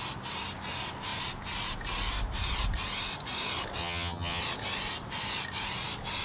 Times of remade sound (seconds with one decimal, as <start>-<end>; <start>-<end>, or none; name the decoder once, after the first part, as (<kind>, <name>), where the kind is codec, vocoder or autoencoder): 3.8-4.4 (vocoder, HiFi-GAN)